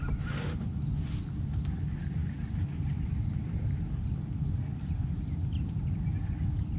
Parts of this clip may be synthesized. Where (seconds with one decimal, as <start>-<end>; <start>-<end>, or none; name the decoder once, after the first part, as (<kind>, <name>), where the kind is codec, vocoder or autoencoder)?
none